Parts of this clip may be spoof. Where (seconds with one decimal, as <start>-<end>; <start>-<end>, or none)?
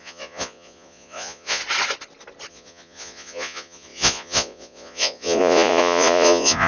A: 0.0-1.6; 2.5-6.7